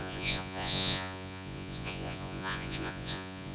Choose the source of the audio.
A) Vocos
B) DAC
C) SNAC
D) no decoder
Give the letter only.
A